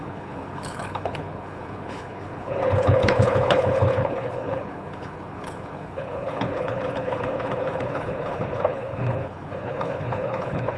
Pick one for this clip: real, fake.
fake